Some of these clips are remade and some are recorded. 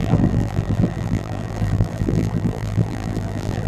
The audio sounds remade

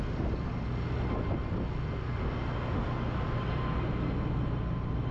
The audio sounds recorded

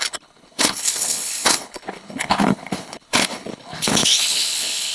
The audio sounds remade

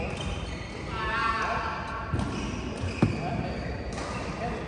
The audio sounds recorded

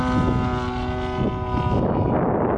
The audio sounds recorded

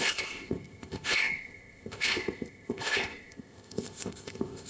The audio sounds remade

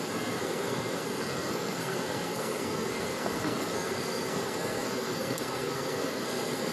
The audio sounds remade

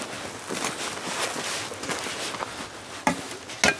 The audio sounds recorded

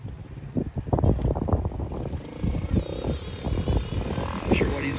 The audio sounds recorded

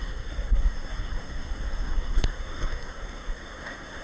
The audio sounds remade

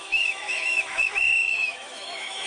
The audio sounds remade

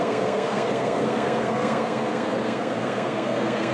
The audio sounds remade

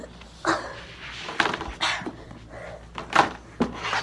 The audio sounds recorded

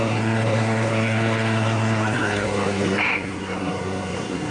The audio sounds remade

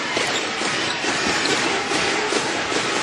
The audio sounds remade